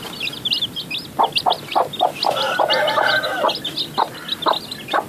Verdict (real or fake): real